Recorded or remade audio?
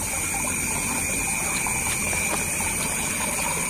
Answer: recorded